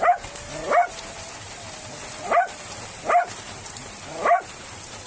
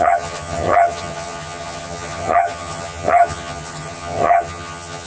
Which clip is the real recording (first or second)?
first